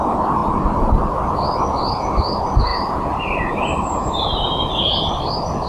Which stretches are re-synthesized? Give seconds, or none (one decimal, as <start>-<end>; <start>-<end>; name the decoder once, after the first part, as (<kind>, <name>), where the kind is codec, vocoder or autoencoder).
2.7-5.0 (vocoder, BigVGAN v2)